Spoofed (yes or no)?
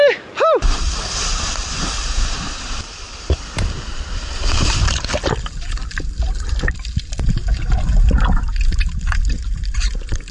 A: yes